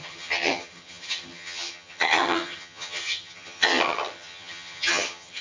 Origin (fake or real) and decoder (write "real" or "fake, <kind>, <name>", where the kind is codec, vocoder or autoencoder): fake, vocoder, HiFi-GAN